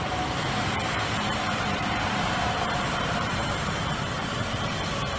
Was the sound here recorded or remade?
remade